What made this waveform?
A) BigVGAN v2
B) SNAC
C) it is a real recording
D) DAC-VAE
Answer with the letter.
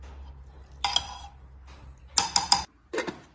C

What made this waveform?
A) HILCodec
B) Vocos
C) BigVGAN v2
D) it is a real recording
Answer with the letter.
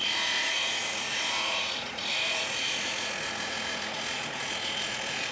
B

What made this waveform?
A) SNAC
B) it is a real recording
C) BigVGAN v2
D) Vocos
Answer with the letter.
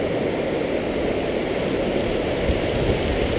B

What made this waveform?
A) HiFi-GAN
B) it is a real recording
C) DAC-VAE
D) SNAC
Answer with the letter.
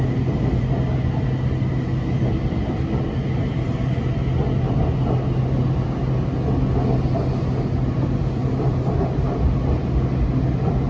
B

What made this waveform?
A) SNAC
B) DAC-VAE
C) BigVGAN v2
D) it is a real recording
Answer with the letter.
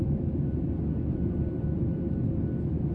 D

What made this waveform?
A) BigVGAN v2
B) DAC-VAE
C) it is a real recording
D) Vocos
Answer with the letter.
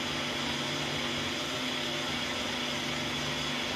C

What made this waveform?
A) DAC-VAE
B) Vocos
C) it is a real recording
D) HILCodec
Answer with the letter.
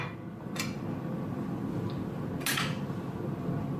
C